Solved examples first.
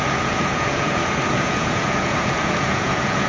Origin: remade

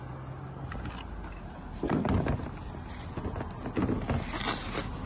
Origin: recorded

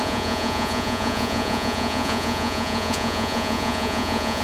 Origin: remade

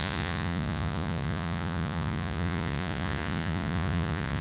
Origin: remade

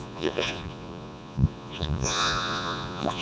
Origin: remade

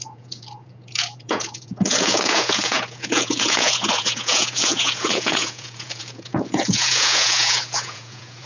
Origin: remade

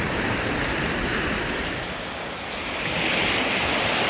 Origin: recorded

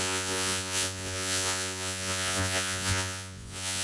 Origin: remade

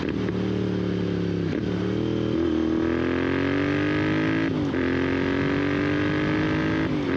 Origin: recorded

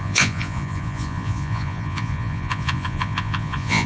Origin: remade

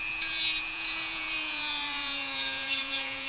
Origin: remade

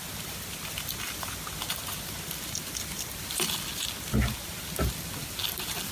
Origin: recorded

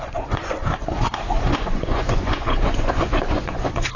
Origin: remade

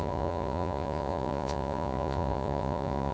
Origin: remade